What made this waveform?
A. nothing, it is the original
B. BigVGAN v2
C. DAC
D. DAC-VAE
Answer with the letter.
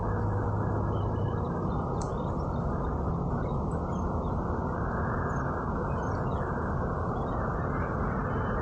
A